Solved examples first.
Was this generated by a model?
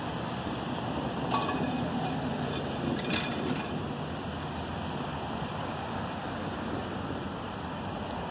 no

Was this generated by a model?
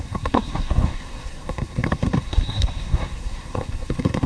yes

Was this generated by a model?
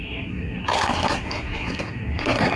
yes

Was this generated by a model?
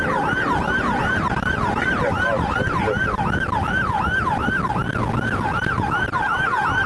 no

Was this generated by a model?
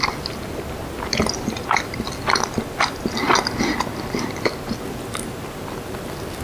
no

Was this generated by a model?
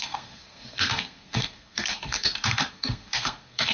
yes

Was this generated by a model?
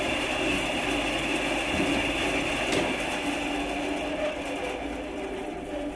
no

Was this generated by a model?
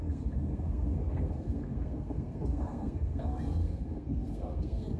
yes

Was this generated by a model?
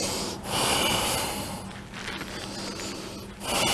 no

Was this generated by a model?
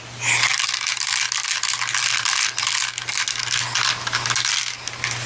no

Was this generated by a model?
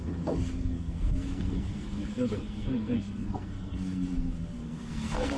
yes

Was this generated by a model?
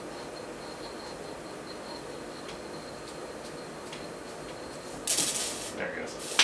no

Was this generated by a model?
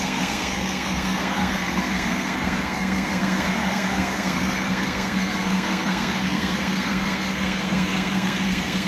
yes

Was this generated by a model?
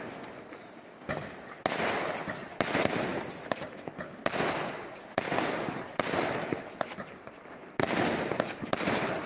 no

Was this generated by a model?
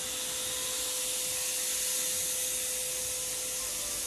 no